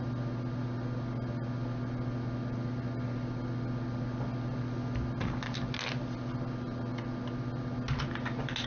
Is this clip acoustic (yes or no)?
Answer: yes